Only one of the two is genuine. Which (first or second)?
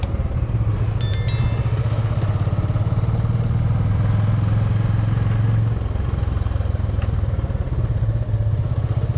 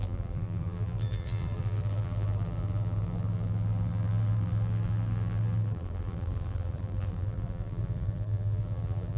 first